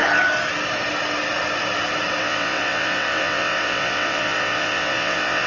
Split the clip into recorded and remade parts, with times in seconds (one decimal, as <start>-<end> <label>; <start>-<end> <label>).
0.0-2.2 recorded; 2.2-5.5 remade